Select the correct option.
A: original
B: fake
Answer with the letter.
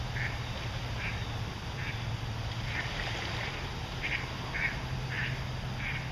A